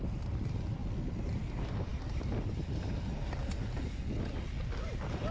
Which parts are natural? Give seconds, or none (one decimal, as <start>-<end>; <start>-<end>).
0.0-5.3